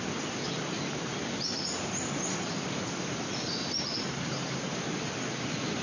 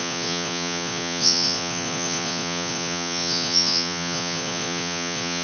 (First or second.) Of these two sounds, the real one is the first